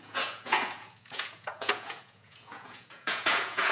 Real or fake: fake